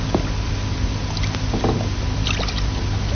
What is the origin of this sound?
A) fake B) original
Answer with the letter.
B